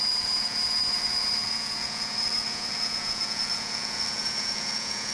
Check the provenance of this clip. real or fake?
fake